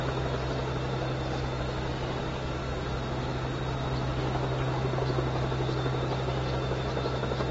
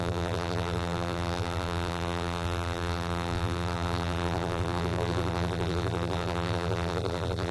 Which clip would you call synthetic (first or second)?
second